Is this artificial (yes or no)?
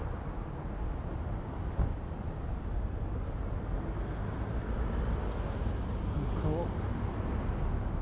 no